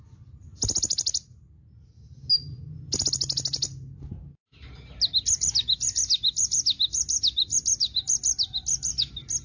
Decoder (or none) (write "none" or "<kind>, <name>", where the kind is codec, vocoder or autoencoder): none